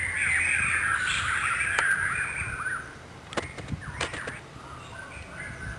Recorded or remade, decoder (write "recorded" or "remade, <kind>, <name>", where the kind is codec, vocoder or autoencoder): recorded